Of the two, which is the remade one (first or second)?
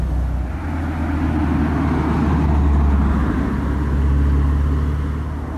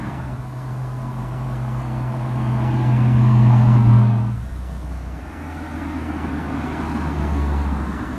second